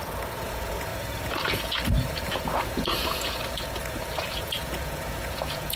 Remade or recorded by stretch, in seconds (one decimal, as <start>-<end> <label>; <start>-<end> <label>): 0.0-5.8 remade